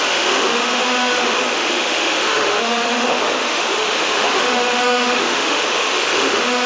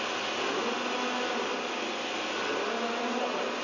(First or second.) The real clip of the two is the second